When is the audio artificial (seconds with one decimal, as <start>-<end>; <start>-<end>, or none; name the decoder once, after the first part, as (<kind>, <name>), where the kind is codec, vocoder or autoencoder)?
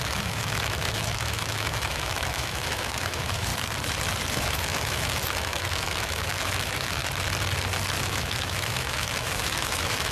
0.0-3.5 (autoencoder, DAC-VAE); 4.3-7.0; 8.0-10.1